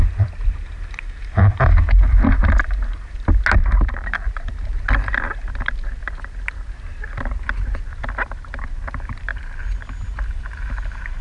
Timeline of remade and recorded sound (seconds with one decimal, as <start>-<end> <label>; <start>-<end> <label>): 0.0-11.2 recorded